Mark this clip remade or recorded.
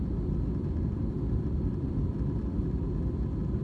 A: recorded